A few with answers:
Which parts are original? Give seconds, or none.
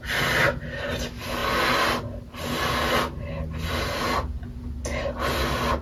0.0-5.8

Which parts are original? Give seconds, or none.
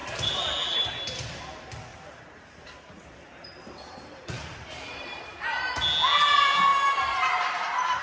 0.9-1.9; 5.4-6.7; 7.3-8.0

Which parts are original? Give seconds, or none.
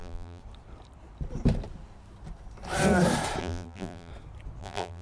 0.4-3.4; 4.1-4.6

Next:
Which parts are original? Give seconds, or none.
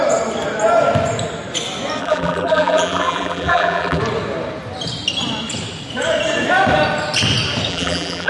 0.0-2.0; 4.0-7.7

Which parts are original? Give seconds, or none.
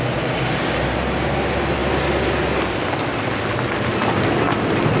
0.0-5.0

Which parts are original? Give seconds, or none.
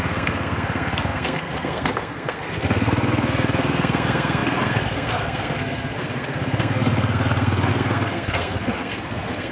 none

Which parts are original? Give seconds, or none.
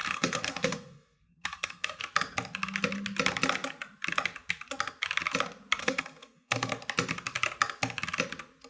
2.0-5.8; 6.7-8.7